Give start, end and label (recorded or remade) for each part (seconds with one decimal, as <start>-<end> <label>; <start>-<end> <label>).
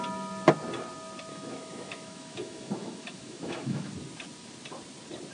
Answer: 0.0-1.3 recorded; 1.3-3.9 remade; 3.9-5.3 recorded